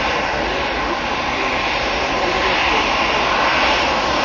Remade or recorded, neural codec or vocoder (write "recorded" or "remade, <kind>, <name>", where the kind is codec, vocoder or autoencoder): recorded